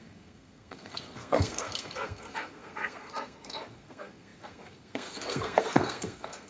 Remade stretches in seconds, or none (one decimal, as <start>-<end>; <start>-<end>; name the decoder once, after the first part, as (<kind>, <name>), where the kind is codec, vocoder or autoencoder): 0.0-6.5 (codec, SNAC)

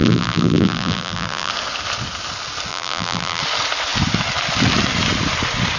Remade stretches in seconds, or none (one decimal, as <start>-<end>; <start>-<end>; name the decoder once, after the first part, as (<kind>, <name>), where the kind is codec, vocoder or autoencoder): 0.0-1.5 (vocoder, BigVGAN v2); 2.7-3.4

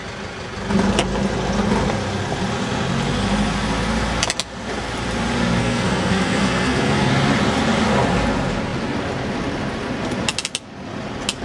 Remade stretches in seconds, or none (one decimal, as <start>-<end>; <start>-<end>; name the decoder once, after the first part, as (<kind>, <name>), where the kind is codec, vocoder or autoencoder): 5.6-7.1 (codec, SNAC)

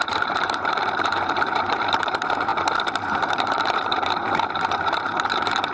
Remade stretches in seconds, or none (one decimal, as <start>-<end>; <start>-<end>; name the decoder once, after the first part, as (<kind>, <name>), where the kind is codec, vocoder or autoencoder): 0.0-2.5 (vocoder, BigVGAN v2); 3.0-5.7

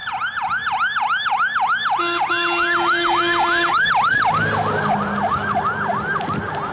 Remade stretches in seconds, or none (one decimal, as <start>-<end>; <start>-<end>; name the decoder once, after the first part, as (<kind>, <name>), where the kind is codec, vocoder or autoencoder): none

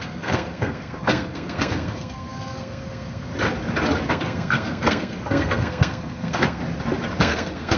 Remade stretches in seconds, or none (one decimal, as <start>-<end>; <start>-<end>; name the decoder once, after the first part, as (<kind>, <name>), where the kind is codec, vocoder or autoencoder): 0.0-3.3 (codec, SNAC); 4.1-6.6; 7.2-7.8

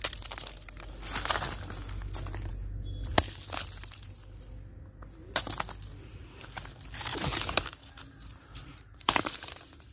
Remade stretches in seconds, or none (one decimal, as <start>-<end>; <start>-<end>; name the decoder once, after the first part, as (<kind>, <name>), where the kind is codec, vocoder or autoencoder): 7.1-7.7 (vocoder, BigVGAN v2); 8.4-9.9